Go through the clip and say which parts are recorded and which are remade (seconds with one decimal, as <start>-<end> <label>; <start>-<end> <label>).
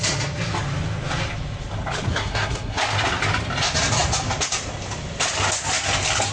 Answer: 0.0-2.1 recorded; 2.1-2.8 remade; 2.8-6.3 recorded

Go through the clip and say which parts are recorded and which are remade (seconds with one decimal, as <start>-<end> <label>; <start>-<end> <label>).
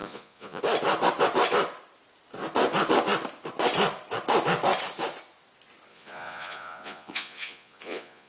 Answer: 0.0-0.6 remade; 0.6-5.9 recorded; 5.9-8.3 remade